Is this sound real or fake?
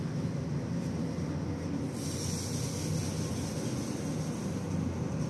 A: real